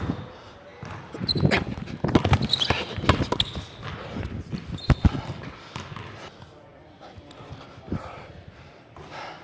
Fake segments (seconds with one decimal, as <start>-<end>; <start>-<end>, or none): 0.7-1.8; 6.7-8.5